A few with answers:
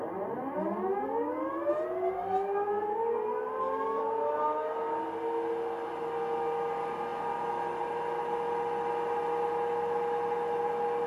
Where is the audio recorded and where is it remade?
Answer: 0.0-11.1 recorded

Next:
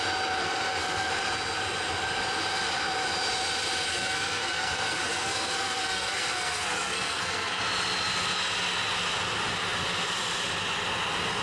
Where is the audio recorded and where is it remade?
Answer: 0.0-0.4 recorded; 0.4-1.1 remade; 1.1-3.9 recorded; 3.9-7.6 remade; 7.6-11.4 recorded

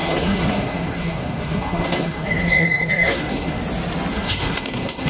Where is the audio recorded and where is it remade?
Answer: 0.0-3.6 remade; 3.6-4.1 recorded; 4.1-5.1 remade

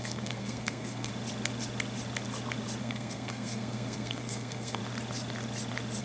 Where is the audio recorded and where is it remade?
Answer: 0.0-1.1 remade; 1.1-2.8 recorded; 2.8-4.8 remade; 4.8-6.0 recorded

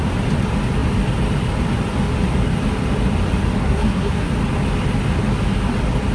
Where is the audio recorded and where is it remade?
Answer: 0.0-3.6 recorded; 3.6-4.3 remade; 4.3-6.1 recorded

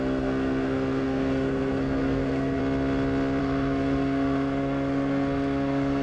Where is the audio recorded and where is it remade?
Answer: 0.0-2.6 remade; 2.6-3.4 recorded; 3.4-6.0 remade